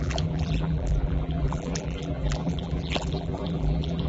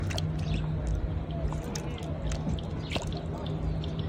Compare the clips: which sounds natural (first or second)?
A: second